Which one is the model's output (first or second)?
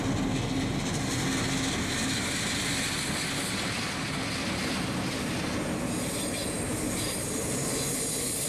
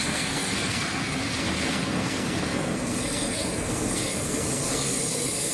second